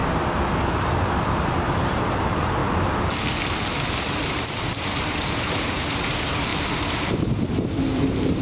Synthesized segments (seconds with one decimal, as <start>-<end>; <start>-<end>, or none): 0.7-2.6; 4.1-6.5; 7.5-8.4